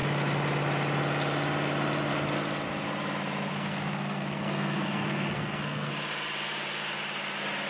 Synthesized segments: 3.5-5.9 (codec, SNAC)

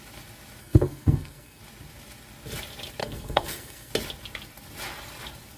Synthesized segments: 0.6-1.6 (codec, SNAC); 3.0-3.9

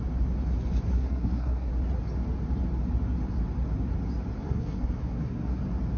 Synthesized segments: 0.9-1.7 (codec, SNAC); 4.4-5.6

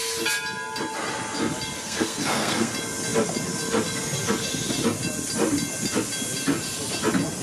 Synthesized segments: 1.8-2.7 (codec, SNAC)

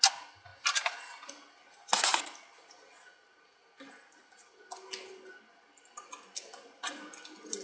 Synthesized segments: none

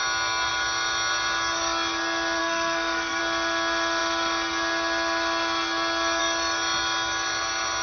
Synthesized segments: 2.4-3.2 (codec, SNAC)